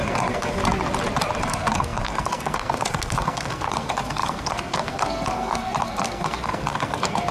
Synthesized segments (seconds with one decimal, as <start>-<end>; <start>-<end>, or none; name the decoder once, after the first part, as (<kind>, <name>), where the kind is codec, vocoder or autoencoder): 0.0-0.6 (codec, SNAC); 1.4-7.3